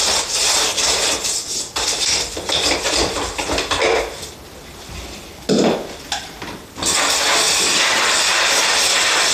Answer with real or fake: real